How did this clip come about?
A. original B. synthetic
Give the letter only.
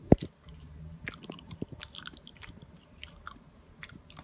B